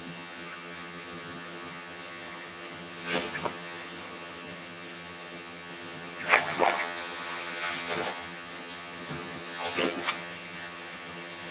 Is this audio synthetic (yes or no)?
yes